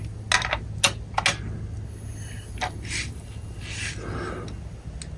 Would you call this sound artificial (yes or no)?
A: no